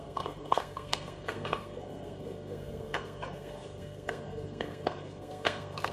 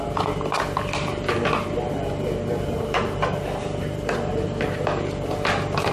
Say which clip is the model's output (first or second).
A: first